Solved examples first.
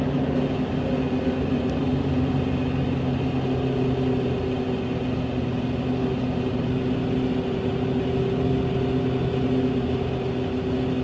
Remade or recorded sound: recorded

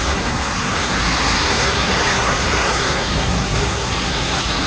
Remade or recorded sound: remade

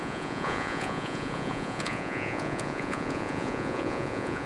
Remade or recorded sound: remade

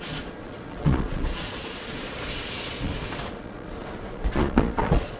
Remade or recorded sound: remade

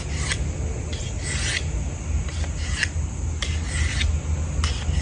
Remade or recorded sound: recorded